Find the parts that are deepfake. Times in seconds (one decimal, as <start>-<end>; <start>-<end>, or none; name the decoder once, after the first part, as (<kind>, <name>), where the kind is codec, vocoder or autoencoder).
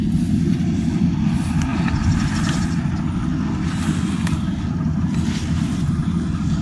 none